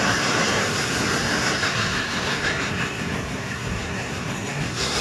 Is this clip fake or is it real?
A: fake